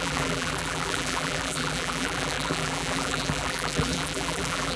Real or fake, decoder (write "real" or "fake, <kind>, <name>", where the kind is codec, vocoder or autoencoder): fake, vocoder, BigVGAN v2